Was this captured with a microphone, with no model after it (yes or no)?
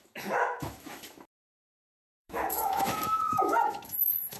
no